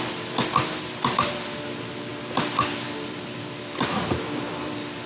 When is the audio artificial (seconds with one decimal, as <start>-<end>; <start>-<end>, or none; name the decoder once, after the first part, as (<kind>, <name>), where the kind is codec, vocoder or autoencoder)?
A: 2.1-5.1 (vocoder, BigVGAN v2)